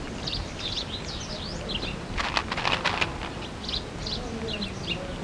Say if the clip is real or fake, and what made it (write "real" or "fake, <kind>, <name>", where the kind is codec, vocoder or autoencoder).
real